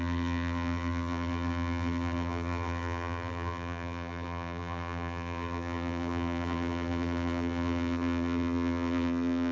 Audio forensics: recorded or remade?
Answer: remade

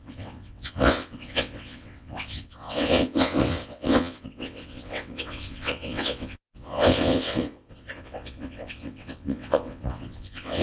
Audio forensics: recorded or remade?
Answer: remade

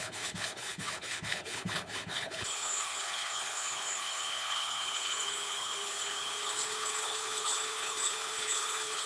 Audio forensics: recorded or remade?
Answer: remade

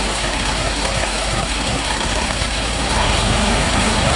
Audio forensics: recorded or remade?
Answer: remade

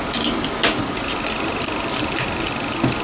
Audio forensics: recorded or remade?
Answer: recorded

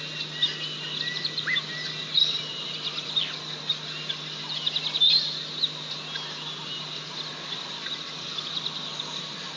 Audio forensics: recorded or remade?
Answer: recorded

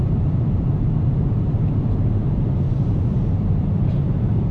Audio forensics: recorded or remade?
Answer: remade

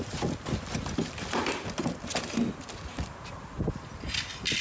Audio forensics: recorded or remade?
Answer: recorded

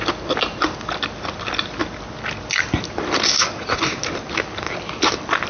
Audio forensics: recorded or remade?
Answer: recorded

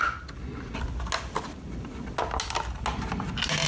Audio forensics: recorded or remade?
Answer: recorded